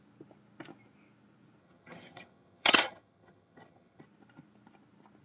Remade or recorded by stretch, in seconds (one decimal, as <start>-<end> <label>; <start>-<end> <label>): 0.0-1.6 recorded; 1.6-4.0 remade; 4.0-5.2 recorded